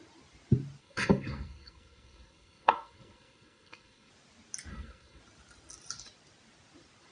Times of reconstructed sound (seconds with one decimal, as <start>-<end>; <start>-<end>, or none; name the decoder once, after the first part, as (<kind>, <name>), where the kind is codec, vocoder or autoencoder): 0.8-4.1 (codec, SNAC); 4.7-5.2